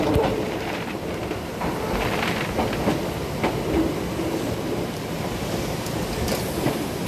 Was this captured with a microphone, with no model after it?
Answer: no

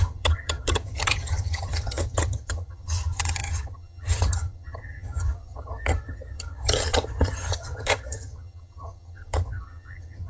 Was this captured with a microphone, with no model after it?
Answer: no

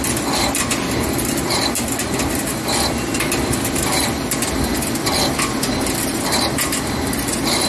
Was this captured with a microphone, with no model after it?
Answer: no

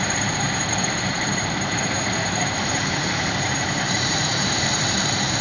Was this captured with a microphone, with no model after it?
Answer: no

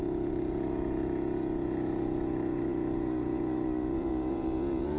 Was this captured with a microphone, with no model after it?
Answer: no